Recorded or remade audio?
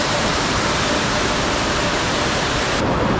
remade